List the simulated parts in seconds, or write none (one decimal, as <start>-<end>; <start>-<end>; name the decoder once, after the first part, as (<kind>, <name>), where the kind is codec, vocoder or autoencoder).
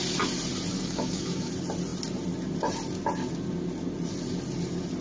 0.7-1.5 (codec, DAC)